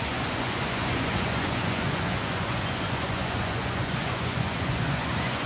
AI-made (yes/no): yes